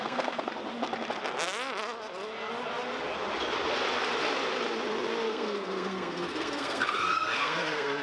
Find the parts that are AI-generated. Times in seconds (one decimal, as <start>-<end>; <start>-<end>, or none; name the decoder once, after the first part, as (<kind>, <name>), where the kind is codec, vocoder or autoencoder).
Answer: 0.0-0.5 (codec, SNAC); 5.3-8.0